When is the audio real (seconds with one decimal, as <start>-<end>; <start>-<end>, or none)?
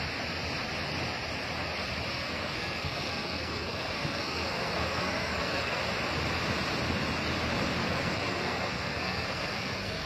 0.0-2.1; 5.8-7.8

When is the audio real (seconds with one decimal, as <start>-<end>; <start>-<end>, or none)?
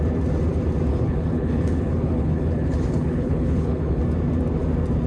0.0-0.9; 4.0-5.1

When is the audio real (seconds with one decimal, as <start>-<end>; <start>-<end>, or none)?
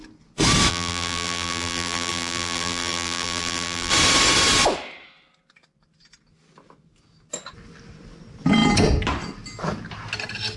0.0-0.7; 3.9-10.6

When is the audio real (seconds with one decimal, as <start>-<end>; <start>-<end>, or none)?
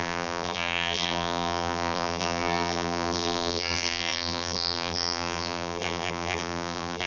none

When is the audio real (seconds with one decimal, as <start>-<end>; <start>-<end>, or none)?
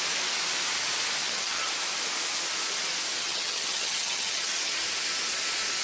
0.0-1.2; 1.7-3.2; 4.8-5.8